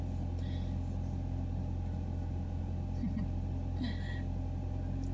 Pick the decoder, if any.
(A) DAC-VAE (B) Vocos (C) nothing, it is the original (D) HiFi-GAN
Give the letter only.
C